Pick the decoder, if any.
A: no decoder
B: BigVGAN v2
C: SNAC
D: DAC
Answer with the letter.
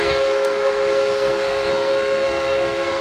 C